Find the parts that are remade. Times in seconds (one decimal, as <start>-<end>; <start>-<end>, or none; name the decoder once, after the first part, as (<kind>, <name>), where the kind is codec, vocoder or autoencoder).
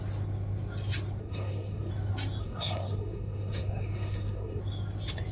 1.2-1.9 (codec, SNAC); 2.4-4.6